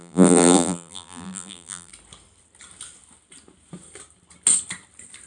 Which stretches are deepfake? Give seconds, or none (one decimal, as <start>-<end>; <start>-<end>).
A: 0.0-1.9